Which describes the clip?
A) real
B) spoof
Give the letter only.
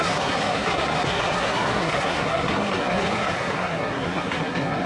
B